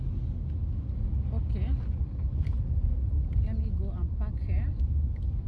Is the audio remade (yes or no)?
no